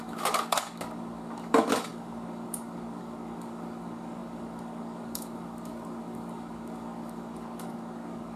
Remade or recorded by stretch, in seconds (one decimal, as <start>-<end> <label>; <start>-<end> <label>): 0.0-8.4 remade

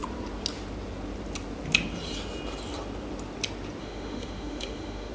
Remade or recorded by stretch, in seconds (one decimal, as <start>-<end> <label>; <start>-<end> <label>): 0.0-3.8 recorded; 3.8-5.1 remade